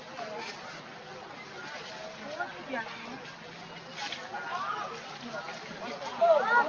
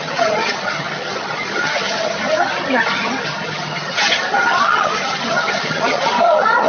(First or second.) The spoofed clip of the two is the second